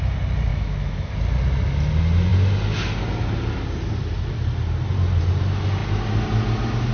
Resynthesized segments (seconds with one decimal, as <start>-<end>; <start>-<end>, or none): 0.5-1.1